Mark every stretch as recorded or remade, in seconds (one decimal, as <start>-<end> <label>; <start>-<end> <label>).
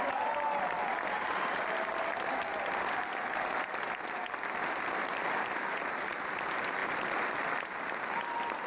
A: 0.0-8.7 recorded